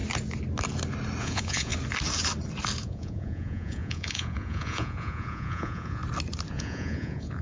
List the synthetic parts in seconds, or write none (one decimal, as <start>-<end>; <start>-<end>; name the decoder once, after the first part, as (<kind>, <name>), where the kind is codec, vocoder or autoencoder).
1.2-1.7 (vocoder, Vocos); 2.8-6.0; 6.5-7.4